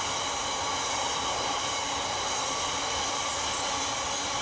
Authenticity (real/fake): real